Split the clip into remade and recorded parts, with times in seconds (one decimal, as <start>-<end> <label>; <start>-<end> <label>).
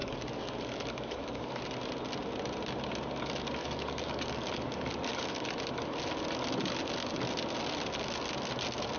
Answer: 0.0-1.6 remade; 1.6-3.6 recorded; 3.6-5.5 remade; 5.5-9.0 recorded